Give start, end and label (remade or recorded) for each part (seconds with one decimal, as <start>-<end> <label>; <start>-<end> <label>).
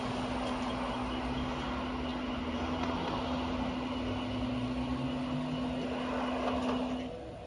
0.0-7.5 recorded